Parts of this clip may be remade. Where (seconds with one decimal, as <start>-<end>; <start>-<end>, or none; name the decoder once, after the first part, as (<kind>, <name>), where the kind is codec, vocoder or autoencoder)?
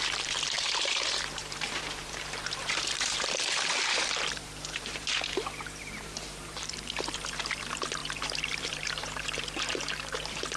0.0-10.6 (vocoder, BigVGAN v2)